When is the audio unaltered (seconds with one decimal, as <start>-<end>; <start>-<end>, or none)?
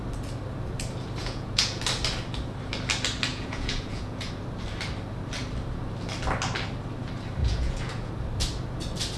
0.0-1.2; 1.8-3.3; 4.3-7.4; 8.1-9.2